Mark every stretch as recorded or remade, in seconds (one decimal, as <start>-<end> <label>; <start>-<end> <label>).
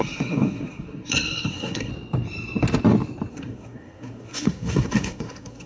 0.0-1.9 remade; 1.9-3.3 recorded; 3.3-5.7 remade